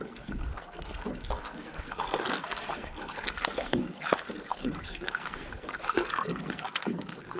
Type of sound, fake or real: fake